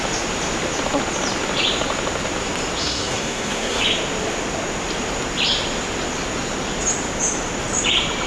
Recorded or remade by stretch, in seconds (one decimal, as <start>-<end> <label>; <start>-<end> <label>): 0.0-2.8 recorded; 2.8-3.8 remade; 3.8-8.3 recorded